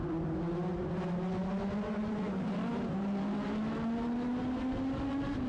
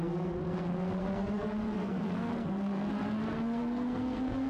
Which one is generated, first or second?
second